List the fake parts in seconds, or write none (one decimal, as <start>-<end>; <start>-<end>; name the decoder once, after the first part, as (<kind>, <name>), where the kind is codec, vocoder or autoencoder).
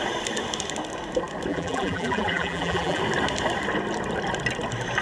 1.5-3.0 (vocoder, BigVGAN v2)